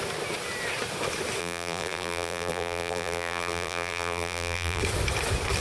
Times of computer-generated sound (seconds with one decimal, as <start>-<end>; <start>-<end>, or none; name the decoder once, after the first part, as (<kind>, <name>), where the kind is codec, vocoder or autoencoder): 1.4-4.8 (vocoder, BigVGAN v2)